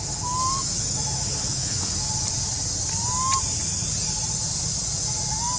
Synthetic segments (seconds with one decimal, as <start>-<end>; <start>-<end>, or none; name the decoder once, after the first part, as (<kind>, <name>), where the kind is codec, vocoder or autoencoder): 0.0-1.8 (autoencoder, DAC-VAE)